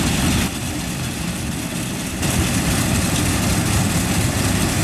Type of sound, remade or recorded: remade